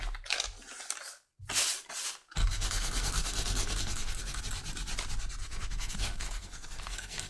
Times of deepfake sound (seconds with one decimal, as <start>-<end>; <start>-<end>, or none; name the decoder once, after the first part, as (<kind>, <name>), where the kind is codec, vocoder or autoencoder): 2.4-4.4 (codec, SNAC); 5.4-7.3